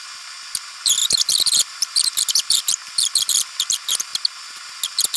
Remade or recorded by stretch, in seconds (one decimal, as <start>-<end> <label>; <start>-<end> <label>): 0.0-1.0 recorded; 1.0-1.9 remade; 1.9-2.8 recorded; 2.8-3.5 remade; 3.5-5.2 recorded